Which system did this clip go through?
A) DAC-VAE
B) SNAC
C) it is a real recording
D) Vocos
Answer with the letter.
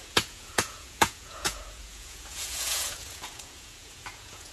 D